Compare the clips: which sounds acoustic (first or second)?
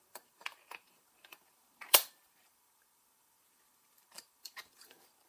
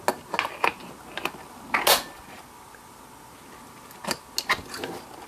second